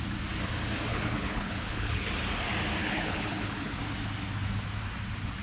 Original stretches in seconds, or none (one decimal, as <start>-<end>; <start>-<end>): 0.0-0.9; 2.1-2.8; 3.8-5.4